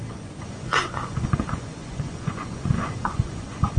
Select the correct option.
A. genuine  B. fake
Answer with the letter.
B